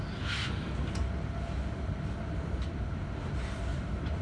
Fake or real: real